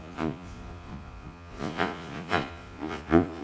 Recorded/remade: remade